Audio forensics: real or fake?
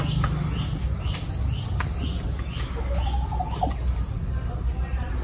real